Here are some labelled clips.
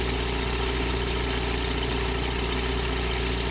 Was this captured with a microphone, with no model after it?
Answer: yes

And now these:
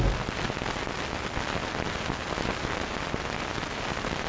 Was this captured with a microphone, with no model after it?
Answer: yes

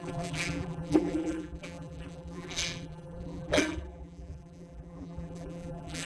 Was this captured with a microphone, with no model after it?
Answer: no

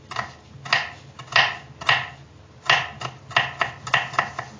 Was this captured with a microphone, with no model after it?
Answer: yes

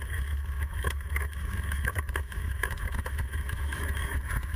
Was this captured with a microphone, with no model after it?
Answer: no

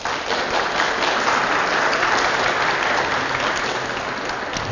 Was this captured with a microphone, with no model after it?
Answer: yes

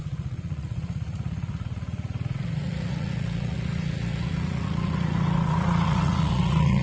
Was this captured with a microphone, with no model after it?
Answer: no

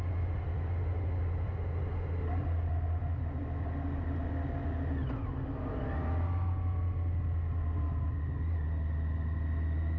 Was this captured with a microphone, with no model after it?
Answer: yes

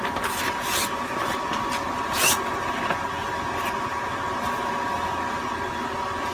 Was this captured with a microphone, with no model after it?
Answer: yes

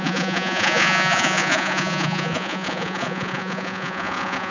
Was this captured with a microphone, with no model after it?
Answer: no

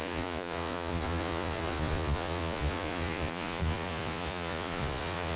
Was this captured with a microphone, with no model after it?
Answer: no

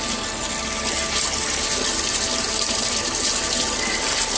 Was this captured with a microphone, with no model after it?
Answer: yes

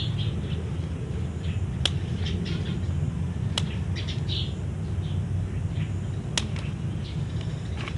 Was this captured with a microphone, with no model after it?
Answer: yes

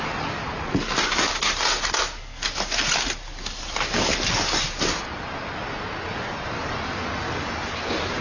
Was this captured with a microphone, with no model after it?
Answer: yes